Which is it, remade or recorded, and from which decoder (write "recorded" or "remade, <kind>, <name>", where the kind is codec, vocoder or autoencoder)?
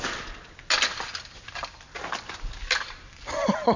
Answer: recorded